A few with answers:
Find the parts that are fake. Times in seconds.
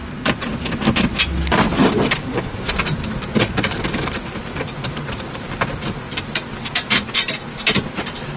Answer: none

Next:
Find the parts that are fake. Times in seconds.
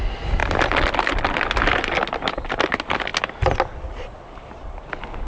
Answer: none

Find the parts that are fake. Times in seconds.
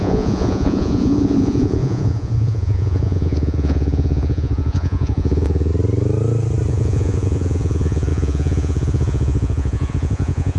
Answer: 0.0-5.7 (vocoder, Vocos); 6.7-10.6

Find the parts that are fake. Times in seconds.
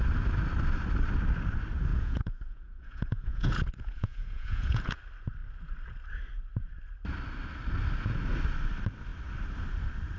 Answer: 1.9-5.0 (vocoder, Vocos)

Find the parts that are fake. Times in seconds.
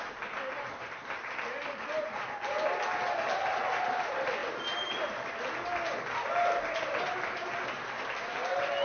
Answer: none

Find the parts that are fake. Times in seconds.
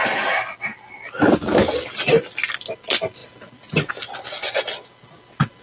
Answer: none